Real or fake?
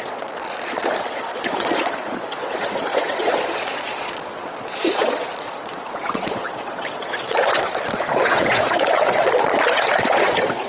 fake